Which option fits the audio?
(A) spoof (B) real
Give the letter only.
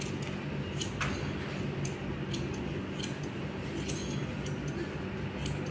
B